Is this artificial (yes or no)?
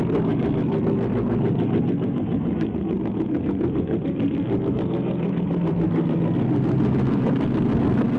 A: yes